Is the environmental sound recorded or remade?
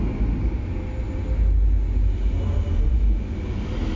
recorded